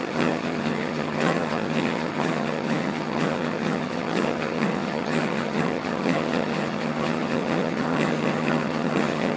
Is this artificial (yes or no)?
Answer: yes